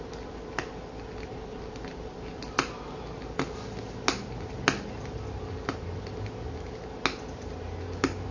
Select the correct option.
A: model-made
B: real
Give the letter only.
B